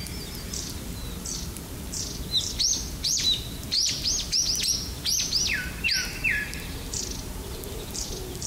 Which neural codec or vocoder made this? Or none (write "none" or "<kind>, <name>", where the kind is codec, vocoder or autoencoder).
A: vocoder, BigVGAN v2